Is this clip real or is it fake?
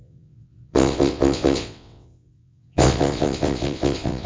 fake